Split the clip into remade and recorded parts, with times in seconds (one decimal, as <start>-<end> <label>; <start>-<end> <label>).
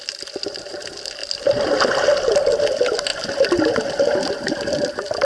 0.0-5.2 recorded